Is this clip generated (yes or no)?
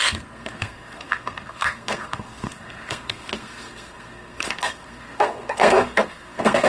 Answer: yes